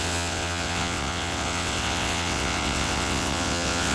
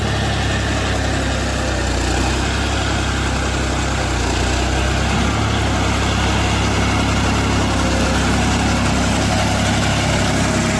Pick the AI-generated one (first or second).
first